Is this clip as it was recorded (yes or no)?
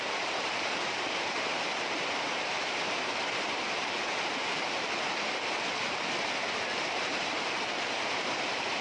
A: no